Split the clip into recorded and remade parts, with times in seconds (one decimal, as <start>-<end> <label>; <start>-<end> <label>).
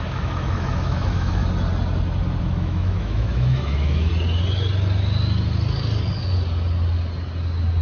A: 0.0-1.4 remade; 1.4-2.4 recorded; 2.4-4.1 remade; 4.1-7.8 recorded